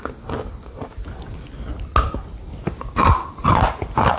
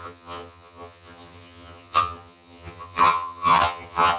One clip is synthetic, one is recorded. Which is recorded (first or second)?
first